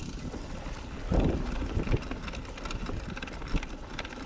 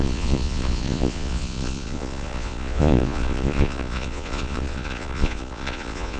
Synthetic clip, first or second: second